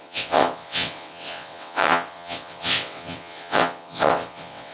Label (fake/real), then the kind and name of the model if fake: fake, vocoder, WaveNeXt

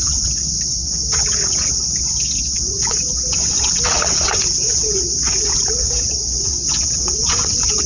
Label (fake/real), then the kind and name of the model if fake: fake, vocoder, WaveNeXt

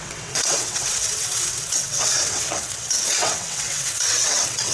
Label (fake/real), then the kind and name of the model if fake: fake, vocoder, WaveNeXt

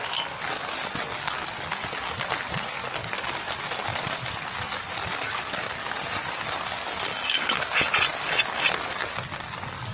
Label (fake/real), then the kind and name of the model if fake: real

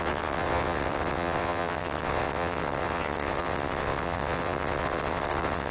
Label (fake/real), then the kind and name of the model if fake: fake, vocoder, WaveNeXt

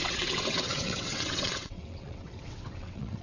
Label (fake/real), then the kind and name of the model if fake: fake, vocoder, WaveNeXt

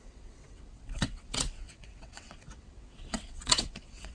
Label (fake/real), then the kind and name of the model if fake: fake, vocoder, WaveNeXt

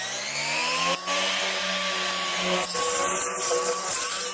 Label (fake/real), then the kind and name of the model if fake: real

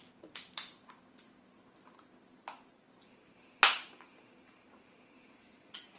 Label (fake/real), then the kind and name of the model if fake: real